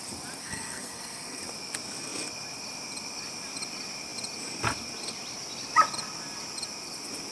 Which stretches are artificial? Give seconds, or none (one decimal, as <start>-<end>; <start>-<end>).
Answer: 0.4-1.4